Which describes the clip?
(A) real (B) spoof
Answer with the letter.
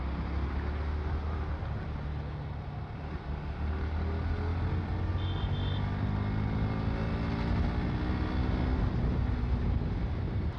A